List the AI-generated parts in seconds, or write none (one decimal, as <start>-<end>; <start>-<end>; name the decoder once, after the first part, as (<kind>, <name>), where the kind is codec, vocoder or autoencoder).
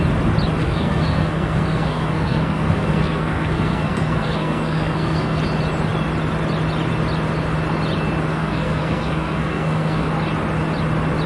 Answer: 0.6-5.4 (codec, SNAC); 8.3-10.1